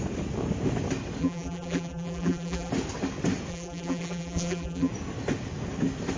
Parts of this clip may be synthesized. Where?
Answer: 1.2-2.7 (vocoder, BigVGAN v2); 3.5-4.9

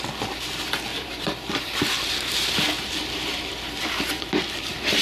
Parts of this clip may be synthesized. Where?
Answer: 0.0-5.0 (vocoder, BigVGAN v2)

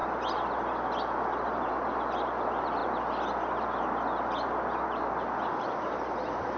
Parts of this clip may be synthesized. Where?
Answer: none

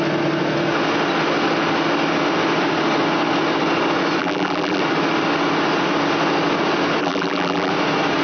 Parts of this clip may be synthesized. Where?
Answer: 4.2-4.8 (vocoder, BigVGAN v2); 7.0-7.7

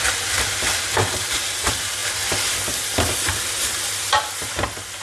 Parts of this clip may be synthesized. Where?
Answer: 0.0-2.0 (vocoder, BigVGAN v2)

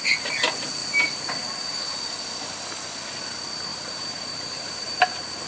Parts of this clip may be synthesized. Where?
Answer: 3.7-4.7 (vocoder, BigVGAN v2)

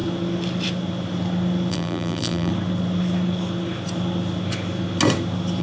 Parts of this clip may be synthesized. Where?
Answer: 1.7-2.5 (vocoder, BigVGAN v2)